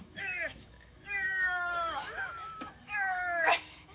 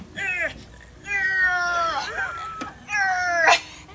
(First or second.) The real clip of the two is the second